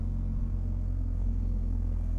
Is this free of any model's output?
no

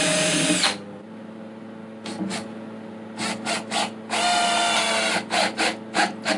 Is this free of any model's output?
yes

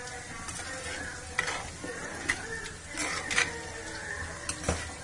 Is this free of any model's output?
yes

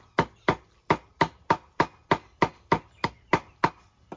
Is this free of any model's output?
yes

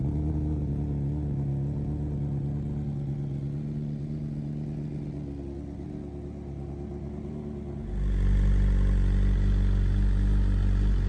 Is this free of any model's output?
yes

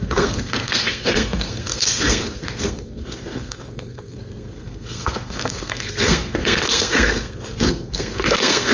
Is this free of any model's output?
no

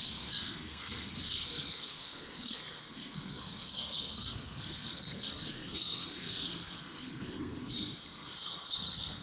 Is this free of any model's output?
no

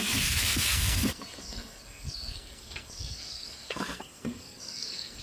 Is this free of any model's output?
no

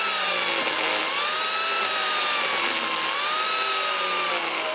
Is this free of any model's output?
yes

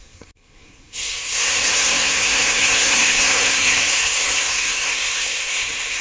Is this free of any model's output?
no